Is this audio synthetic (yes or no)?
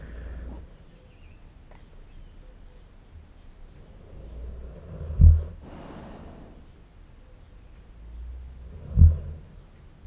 no